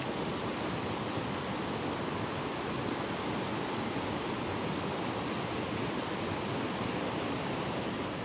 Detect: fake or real real